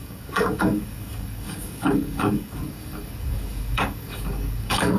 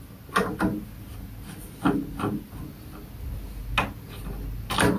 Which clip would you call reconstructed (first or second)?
first